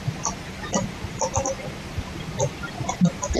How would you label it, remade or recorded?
recorded